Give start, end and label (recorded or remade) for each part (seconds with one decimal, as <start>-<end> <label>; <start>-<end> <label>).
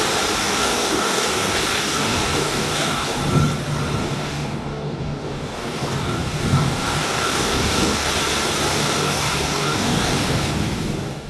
0.0-0.4 recorded; 0.4-3.2 remade; 3.2-4.0 recorded; 4.0-8.1 remade; 8.1-8.7 recorded; 8.7-11.3 remade